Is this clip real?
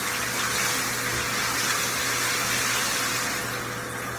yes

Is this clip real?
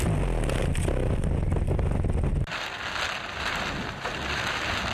yes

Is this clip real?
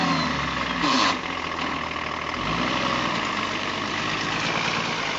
yes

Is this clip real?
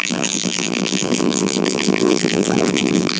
no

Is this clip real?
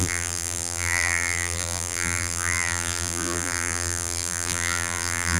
no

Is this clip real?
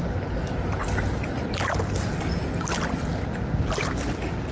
yes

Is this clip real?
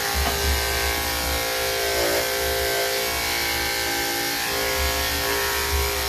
yes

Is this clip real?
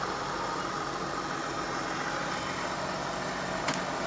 yes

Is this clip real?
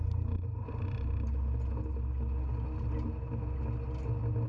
yes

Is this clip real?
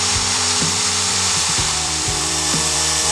no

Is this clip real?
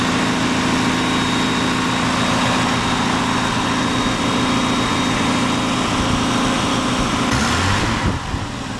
yes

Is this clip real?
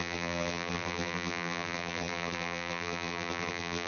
no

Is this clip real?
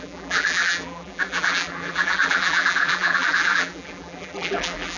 no